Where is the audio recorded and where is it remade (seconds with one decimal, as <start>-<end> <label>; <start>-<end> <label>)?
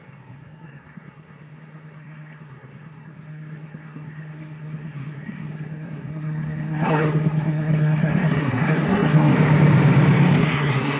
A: 0.0-9.3 remade; 9.3-10.4 recorded; 10.4-11.0 remade